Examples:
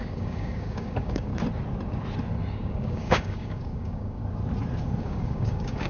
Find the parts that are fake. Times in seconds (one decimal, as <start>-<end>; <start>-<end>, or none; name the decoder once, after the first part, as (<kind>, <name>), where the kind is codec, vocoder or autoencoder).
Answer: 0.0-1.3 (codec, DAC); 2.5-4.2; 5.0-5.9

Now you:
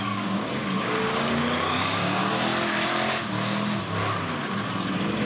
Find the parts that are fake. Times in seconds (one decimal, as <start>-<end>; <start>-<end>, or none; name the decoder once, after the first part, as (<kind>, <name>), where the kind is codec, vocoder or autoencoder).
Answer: 0.0-2.2 (codec, DAC)

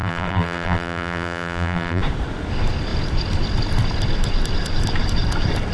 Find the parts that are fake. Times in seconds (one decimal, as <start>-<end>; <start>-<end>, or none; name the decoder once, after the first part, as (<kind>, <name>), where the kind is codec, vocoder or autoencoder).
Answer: 0.0-2.0 (vocoder, BigVGAN v2)